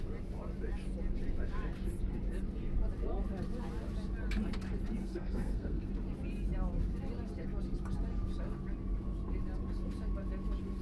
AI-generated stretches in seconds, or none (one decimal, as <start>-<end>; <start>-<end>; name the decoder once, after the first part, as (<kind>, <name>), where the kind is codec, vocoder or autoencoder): 5.0-5.9 (codec, SNAC)